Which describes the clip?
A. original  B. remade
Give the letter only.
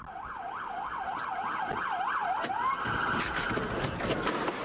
A